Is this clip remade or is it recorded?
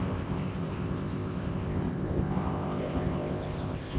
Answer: remade